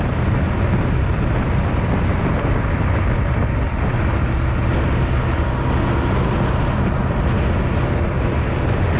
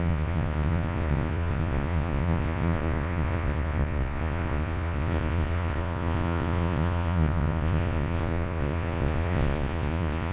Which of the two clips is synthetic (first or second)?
second